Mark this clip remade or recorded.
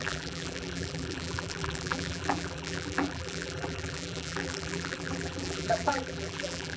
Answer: remade